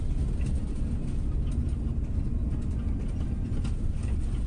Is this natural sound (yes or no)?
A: yes